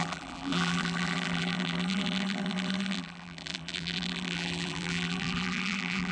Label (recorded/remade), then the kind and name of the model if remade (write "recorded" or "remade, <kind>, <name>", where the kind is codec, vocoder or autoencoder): remade, vocoder, BigVGAN v2